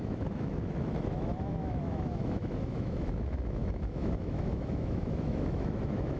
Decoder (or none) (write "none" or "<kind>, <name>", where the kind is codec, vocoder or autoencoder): autoencoder, DAC-VAE